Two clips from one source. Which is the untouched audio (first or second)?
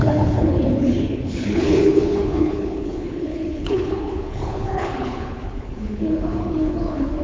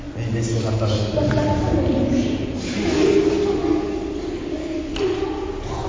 second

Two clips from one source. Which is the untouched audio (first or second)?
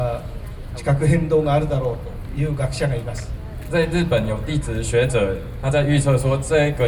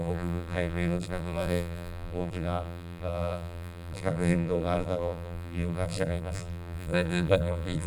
first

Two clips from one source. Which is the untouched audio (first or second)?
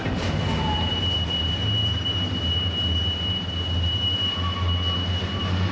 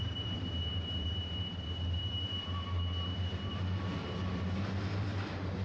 first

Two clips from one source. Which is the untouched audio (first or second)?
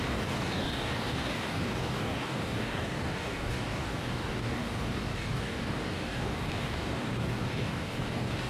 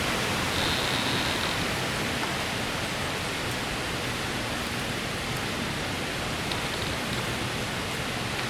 second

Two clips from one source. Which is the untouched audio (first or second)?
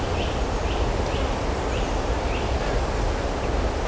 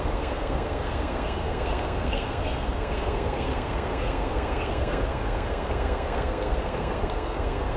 first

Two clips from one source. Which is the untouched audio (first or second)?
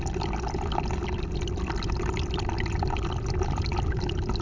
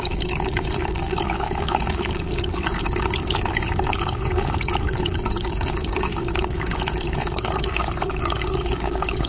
first